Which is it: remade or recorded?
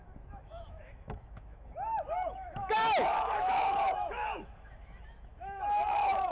remade